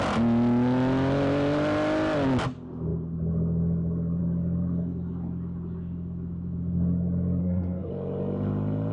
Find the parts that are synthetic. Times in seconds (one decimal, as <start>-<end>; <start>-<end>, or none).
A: 7.4-7.9

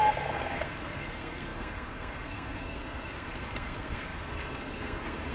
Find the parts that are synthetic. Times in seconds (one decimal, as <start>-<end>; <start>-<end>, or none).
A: 0.0-5.3